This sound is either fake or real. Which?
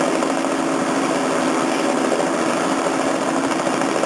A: real